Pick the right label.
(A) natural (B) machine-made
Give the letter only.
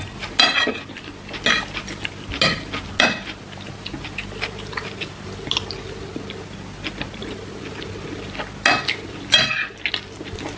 A